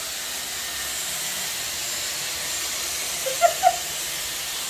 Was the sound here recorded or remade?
recorded